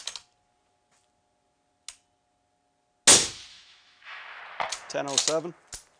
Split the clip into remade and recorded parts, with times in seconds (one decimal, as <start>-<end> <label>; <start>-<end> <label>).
0.0-3.5 recorded; 3.5-4.4 remade; 4.4-6.0 recorded

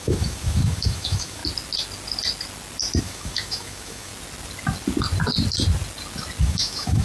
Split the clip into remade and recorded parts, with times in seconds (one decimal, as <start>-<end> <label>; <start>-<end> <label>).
0.0-1.4 remade; 1.4-3.0 recorded; 3.0-4.1 remade; 4.1-6.4 recorded; 6.4-7.0 remade

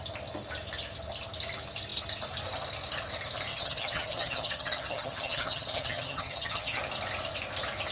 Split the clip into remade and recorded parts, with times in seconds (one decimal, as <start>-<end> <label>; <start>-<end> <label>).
0.0-3.5 recorded; 3.5-6.8 remade; 6.8-7.9 recorded

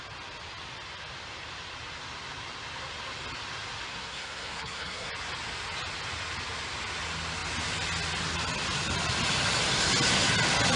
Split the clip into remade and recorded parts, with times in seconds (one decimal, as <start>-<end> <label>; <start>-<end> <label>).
0.0-3.9 recorded; 3.9-5.1 remade; 5.1-10.8 recorded

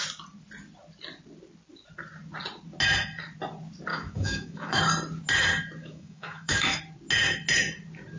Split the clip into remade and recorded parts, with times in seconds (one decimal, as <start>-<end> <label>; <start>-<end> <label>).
0.0-3.9 recorded; 3.9-4.8 remade; 4.8-5.8 recorded; 5.8-6.8 remade; 6.8-8.2 recorded

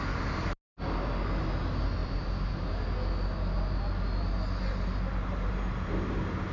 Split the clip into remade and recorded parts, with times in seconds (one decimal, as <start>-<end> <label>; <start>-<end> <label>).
0.0-6.5 recorded